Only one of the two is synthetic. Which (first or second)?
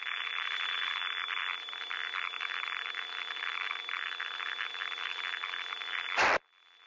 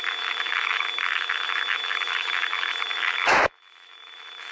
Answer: second